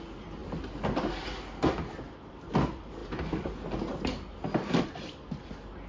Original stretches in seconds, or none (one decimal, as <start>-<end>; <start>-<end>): 0.0-5.9